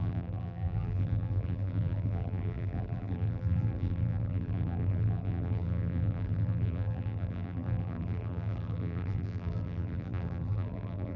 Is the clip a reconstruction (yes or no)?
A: yes